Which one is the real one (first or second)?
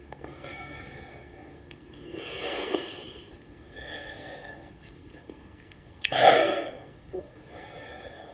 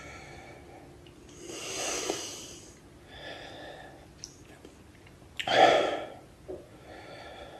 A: second